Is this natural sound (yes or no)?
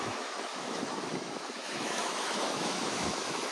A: no